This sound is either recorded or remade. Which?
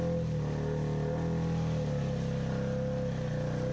recorded